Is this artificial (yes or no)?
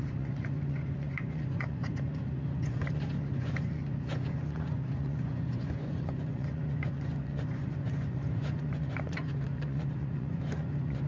yes